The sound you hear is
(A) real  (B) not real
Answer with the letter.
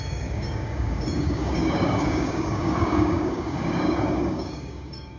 B